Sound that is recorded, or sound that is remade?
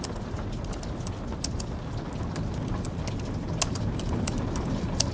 recorded